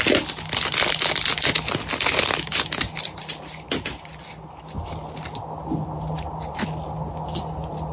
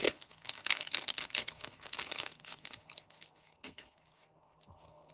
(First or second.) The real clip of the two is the first